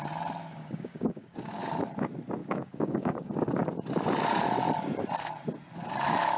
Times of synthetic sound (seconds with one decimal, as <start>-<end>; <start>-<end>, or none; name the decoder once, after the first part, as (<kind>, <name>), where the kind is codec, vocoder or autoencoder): 0.6-1.6 (codec, DAC); 2.4-3.5